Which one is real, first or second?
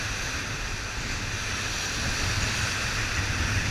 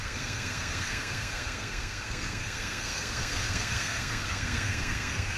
first